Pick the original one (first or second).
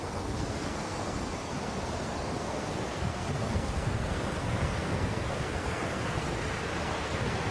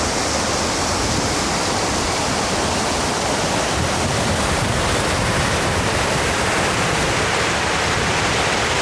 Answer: second